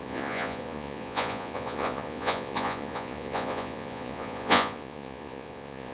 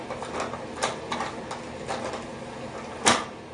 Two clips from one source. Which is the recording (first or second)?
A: second